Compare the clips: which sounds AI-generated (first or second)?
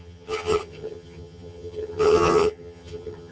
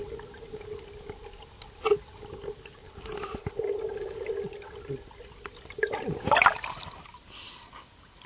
first